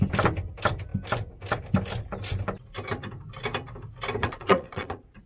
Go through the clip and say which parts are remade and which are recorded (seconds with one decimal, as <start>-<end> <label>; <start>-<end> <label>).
0.0-4.2 recorded; 4.2-5.3 remade